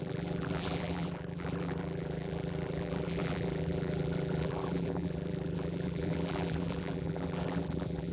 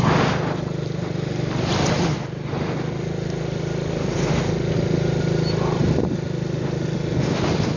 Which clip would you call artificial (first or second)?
first